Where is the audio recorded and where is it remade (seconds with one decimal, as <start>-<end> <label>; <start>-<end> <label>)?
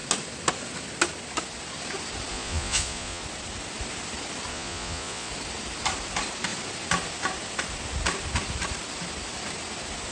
0.0-2.3 recorded; 2.3-3.2 remade; 3.2-4.5 recorded; 4.5-5.3 remade; 5.3-10.1 recorded